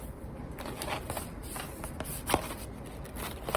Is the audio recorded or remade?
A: recorded